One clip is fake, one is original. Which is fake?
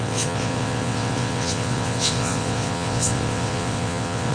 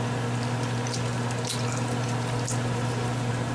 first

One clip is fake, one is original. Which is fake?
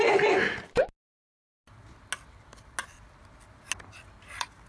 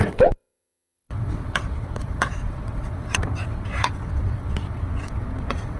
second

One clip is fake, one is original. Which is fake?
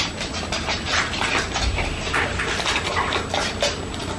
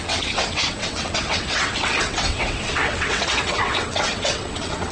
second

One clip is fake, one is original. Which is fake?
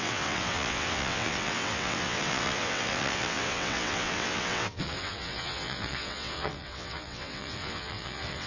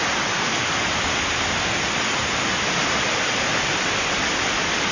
first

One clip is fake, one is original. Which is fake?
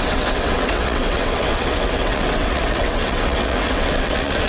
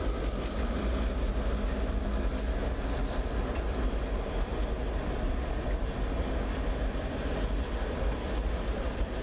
first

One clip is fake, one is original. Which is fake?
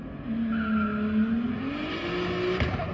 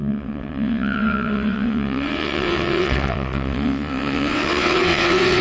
second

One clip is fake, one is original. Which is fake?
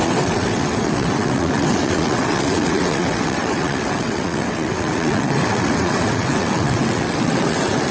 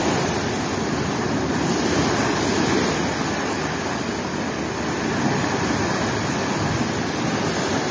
first